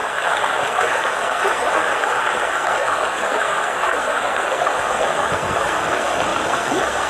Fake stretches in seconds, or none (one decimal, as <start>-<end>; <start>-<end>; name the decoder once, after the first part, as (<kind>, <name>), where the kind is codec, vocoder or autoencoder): 0.0-7.1 (codec, SNAC)